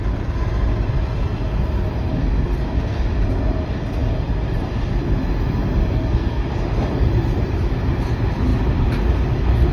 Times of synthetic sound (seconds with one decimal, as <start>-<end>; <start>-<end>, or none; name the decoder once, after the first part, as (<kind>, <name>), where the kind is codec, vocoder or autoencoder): 5.8-6.4 (codec, SNAC)